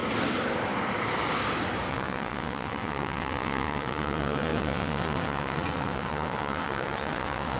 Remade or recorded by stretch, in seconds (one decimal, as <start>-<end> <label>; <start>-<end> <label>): 0.0-1.9 recorded; 1.9-7.6 remade

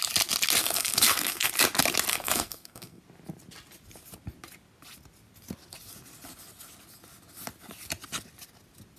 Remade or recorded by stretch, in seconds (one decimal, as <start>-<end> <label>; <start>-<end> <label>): 0.0-0.6 recorded; 0.6-1.5 remade; 1.5-2.1 recorded; 2.1-3.0 remade; 3.0-9.0 recorded

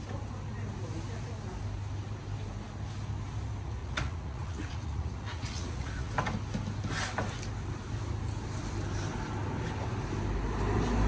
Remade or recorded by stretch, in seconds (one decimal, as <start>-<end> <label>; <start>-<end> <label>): 0.0-3.8 recorded; 3.8-6.1 remade; 6.1-11.1 recorded

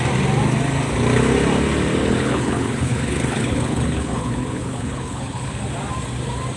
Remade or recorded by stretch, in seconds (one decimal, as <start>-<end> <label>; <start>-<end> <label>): 0.0-2.0 recorded; 2.0-5.5 remade; 5.5-6.6 recorded